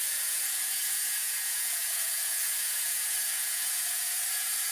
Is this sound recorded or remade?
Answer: remade